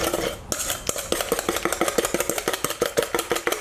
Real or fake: real